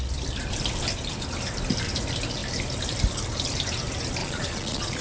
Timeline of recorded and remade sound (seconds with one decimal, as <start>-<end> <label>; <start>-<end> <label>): 0.0-4.2 recorded; 4.2-5.0 remade